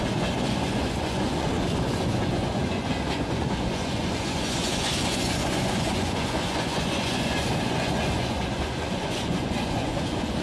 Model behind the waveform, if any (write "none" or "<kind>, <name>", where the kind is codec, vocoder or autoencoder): vocoder, Vocos